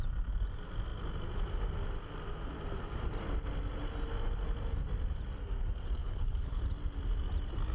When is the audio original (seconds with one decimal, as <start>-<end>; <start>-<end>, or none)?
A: 0.0-6.0; 6.6-7.7